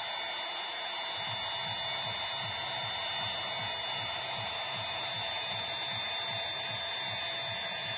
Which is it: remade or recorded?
recorded